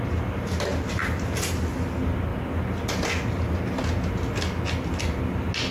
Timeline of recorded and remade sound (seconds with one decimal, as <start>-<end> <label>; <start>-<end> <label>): 0.0-5.7 recorded